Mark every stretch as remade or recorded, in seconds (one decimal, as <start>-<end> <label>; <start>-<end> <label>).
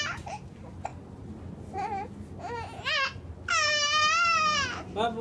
0.0-5.2 recorded